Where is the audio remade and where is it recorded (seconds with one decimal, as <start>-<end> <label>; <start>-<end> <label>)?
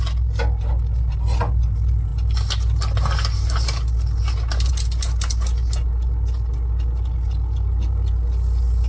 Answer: 0.0-8.9 recorded